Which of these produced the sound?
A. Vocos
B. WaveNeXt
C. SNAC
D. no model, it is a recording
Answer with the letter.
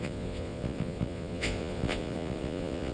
A